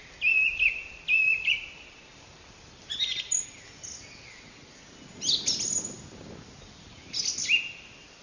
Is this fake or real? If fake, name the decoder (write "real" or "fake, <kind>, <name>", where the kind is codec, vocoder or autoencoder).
real